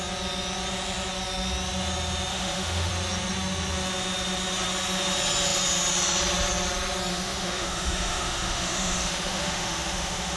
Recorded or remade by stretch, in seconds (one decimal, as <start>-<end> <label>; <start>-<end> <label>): 0.0-2.3 recorded; 2.3-2.9 remade; 2.9-7.1 recorded; 7.1-10.4 remade